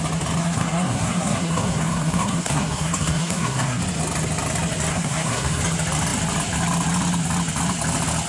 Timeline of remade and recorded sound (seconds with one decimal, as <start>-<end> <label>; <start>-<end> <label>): 0.0-0.4 recorded; 0.4-3.8 remade; 3.8-4.9 recorded; 4.9-5.6 remade; 5.6-8.3 recorded